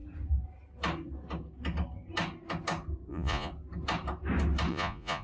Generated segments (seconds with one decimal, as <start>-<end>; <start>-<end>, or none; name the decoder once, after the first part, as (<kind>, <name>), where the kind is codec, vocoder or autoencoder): 3.1-3.5 (vocoder, Vocos); 4.7-5.2